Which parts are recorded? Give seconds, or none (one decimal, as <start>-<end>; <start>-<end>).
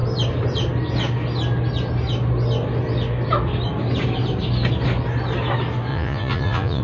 0.0-5.9